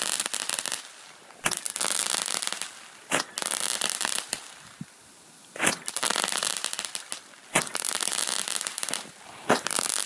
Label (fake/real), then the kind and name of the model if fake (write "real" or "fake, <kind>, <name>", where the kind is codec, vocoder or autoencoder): real